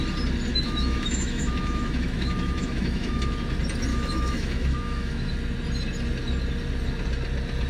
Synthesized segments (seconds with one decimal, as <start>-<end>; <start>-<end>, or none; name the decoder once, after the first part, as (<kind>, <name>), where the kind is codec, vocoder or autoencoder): 0.5-3.4 (autoencoder, DAC-VAE); 3.9-5.3